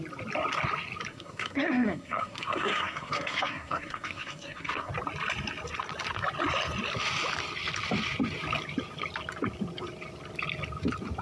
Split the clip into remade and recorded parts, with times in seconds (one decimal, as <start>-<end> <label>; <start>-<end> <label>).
0.0-1.1 recorded; 1.1-4.9 remade; 4.9-11.2 recorded